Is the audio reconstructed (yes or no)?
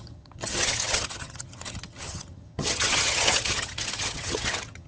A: yes